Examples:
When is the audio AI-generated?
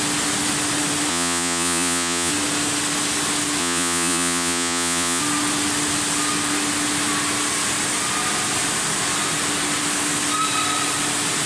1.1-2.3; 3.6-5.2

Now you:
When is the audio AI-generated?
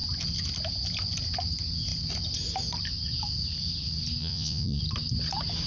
4.2-4.8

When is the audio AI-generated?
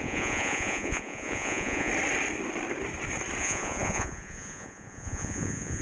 0.0-1.9; 3.4-5.8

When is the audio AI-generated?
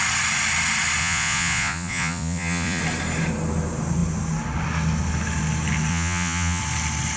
1.0-2.8; 5.9-6.6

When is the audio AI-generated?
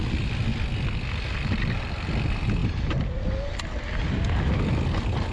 none